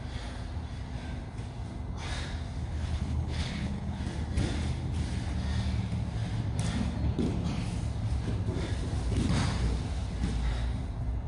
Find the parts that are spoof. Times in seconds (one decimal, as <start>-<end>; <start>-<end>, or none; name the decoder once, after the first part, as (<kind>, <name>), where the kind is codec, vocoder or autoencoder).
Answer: 2.6-4.0 (codec, HILCodec)